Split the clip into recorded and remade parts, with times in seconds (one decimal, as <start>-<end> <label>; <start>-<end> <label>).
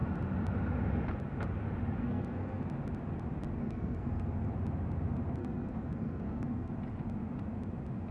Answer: 0.0-2.0 recorded; 2.0-2.6 remade; 2.6-3.6 recorded; 3.6-4.5 remade; 4.5-5.4 recorded; 5.4-6.7 remade; 6.7-8.1 recorded